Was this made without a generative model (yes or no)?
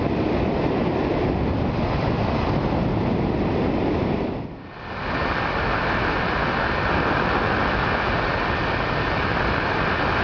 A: yes